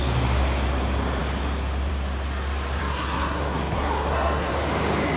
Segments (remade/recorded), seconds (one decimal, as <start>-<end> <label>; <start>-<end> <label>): 0.0-2.8 recorded; 2.8-4.5 remade; 4.5-5.2 recorded

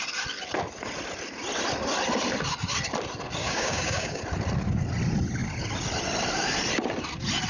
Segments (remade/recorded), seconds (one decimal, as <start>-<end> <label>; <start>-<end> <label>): 0.0-3.4 recorded; 3.4-4.2 remade; 4.2-7.5 recorded

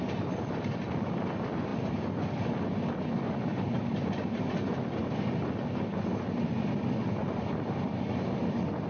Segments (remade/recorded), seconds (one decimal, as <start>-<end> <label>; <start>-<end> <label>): 0.0-8.9 recorded

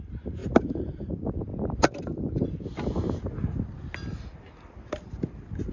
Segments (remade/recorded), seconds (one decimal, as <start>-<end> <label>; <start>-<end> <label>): 0.0-0.4 recorded; 0.4-1.1 remade; 1.1-5.7 recorded